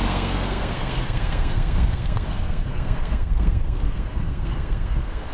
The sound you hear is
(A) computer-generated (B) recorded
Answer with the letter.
A